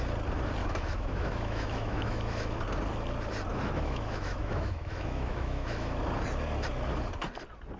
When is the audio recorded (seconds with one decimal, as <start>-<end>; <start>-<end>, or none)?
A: 0.0-0.6; 2.6-3.5; 6.0-7.8

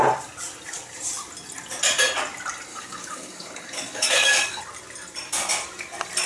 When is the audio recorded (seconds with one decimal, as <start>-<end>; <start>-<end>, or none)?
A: 0.0-2.7; 4.6-6.3

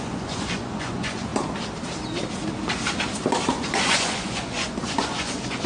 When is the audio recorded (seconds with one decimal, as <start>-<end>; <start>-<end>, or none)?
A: 1.3-3.6